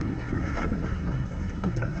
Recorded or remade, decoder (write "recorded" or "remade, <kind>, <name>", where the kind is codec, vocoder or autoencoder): remade, codec, SNAC